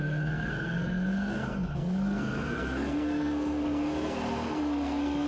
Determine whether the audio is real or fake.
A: fake